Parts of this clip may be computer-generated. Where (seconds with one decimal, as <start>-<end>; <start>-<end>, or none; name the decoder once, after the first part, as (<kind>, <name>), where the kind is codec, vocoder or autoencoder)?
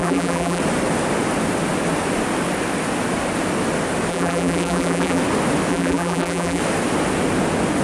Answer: 0.0-0.6 (vocoder, BigVGAN v2); 4.1-5.2; 5.7-6.6